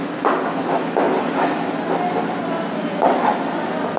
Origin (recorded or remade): recorded